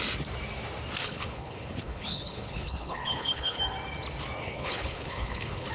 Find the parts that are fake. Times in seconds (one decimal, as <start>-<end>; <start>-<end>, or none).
1.0-3.6; 4.4-5.7